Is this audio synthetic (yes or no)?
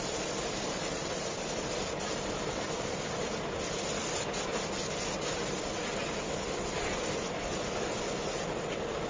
no